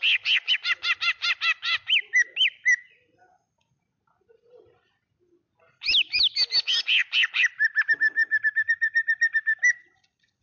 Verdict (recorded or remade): recorded